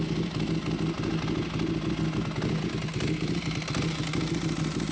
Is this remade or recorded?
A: recorded